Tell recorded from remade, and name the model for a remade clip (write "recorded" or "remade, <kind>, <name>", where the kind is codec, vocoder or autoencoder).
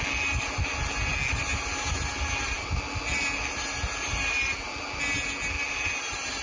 recorded